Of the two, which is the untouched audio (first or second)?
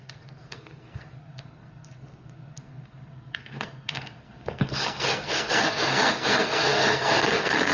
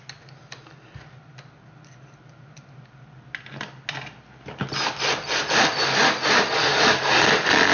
second